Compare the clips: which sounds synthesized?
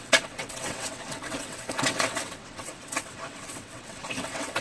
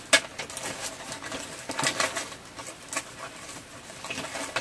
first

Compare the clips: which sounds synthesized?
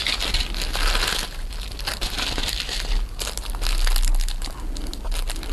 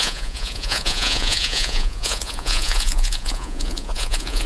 second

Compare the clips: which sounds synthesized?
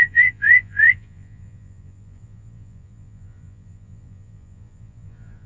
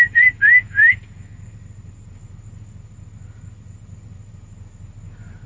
first